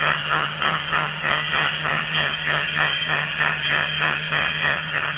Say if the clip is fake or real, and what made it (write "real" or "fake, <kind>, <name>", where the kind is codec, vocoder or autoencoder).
fake, vocoder, HiFi-GAN